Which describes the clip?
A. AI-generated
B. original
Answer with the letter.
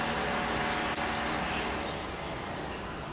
B